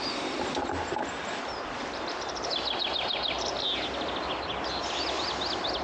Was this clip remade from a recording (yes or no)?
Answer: no